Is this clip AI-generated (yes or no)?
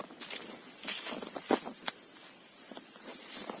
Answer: no